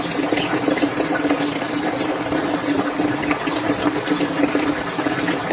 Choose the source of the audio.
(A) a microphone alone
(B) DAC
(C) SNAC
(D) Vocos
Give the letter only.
A